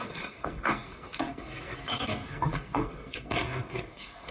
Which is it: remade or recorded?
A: remade